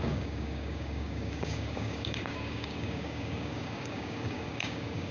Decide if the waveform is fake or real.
fake